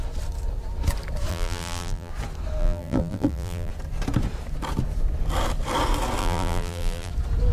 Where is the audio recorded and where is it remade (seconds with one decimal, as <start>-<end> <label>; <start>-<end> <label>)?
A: 0.0-1.3 recorded; 1.3-2.1 remade; 2.1-2.6 recorded; 2.6-3.7 remade; 3.7-6.2 recorded; 6.2-7.1 remade; 7.1-7.5 recorded